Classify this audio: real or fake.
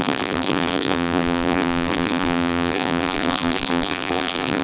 fake